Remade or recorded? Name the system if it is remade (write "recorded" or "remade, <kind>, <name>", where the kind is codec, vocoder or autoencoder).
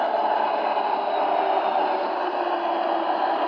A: recorded